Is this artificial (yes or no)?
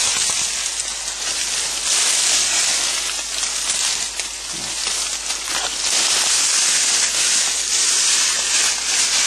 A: no